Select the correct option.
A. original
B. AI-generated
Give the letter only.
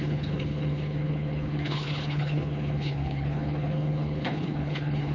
B